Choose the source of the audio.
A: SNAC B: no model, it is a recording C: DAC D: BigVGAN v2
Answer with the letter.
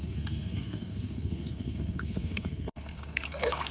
A